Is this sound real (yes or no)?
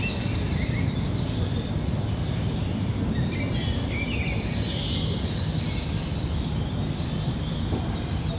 yes